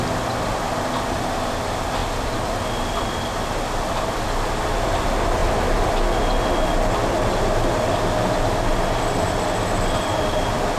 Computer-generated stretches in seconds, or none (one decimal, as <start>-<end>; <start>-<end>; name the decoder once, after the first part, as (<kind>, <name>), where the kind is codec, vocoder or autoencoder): none